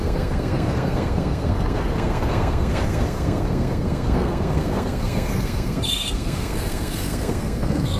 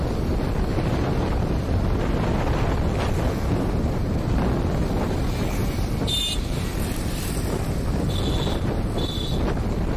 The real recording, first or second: second